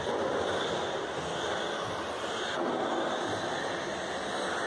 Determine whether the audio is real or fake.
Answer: real